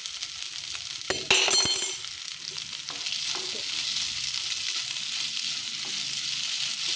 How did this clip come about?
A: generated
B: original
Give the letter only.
B